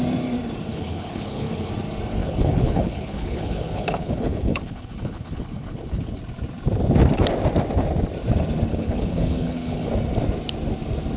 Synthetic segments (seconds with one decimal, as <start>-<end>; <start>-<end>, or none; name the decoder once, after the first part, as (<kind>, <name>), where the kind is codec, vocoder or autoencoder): 0.7-1.7 (codec, HILCodec); 2.2-6.2; 8.7-9.9